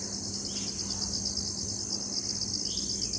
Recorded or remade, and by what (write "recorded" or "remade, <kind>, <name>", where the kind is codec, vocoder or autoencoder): recorded